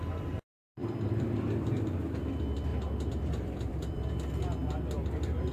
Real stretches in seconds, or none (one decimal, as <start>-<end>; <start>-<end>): 0.0-0.8; 2.3-2.7; 4.1-5.5